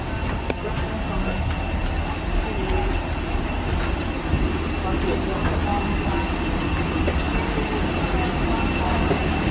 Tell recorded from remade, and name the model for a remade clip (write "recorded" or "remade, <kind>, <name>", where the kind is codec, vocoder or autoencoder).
recorded